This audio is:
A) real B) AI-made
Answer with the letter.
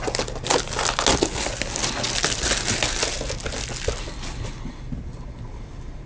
A